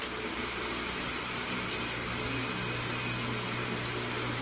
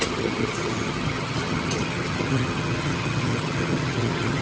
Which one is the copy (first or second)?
second